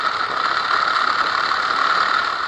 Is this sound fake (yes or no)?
no